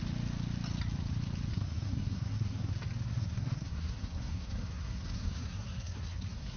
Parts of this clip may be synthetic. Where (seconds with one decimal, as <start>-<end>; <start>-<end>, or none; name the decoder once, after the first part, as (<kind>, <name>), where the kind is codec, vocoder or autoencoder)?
1.5-2.7 (codec, SNAC); 3.1-6.6